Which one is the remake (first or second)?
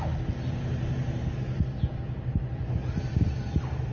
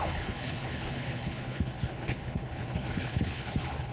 second